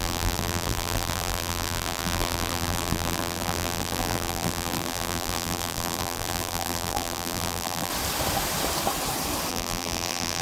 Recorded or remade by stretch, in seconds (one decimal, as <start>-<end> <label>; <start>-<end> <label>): 0.0-7.9 remade; 7.9-9.5 recorded; 9.5-10.4 remade